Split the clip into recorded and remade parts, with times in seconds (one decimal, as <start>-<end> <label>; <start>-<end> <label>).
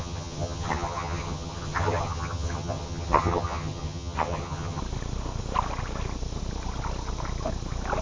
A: 0.0-4.8 remade; 4.8-8.0 recorded